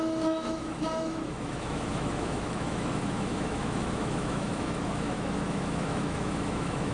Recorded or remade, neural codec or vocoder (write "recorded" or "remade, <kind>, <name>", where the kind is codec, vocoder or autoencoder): remade, autoencoder, DAC-VAE